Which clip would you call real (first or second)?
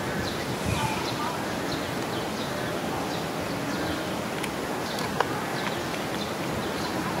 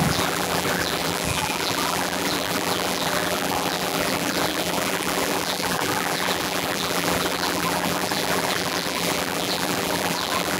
first